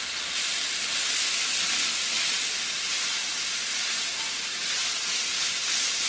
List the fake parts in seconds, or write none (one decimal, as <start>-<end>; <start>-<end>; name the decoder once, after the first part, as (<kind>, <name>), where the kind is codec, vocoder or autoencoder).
none